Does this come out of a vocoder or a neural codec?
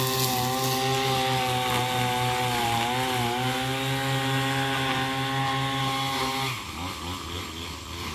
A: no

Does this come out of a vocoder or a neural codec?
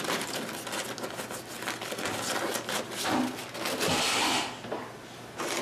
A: no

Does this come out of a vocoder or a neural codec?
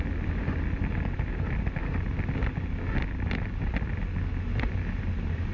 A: no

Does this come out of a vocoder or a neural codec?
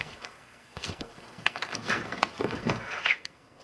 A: yes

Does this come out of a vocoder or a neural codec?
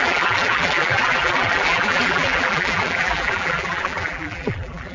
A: yes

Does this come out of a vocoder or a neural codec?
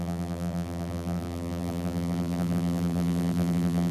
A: yes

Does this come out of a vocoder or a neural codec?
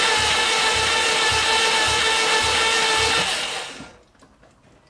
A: no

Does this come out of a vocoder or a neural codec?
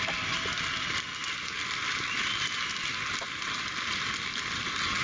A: no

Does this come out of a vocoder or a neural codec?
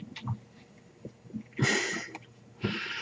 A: yes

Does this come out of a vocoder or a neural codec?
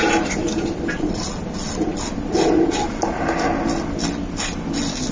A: no